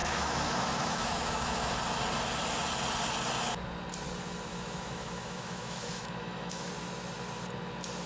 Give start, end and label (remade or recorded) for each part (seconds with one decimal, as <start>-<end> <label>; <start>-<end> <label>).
0.0-1.7 remade; 1.7-4.5 recorded; 4.5-6.7 remade; 6.7-8.1 recorded